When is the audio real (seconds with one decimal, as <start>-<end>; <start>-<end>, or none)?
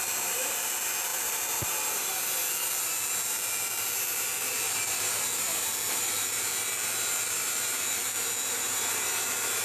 none